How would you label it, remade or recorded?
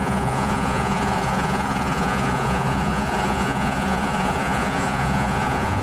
remade